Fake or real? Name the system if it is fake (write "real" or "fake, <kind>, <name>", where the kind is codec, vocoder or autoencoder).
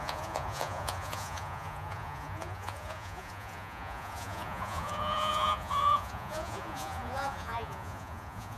fake, vocoder, Vocos